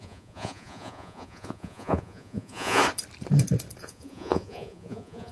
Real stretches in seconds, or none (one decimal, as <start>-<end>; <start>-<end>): 2.8-3.8